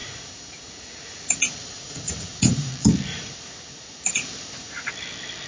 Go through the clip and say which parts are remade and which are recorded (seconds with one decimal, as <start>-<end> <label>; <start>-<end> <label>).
0.0-2.7 remade; 2.7-3.1 recorded; 3.1-4.9 remade; 4.9-5.5 recorded